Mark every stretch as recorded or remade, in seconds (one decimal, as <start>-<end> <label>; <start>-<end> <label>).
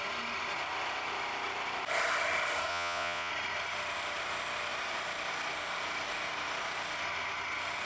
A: 0.0-2.7 recorded; 2.7-3.3 remade; 3.3-7.9 recorded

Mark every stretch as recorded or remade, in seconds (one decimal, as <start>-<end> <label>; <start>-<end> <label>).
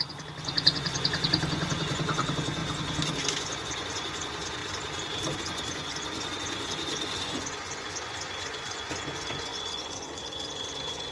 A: 0.0-2.6 remade; 2.6-3.3 recorded; 3.3-4.6 remade; 4.6-5.4 recorded; 5.4-11.1 remade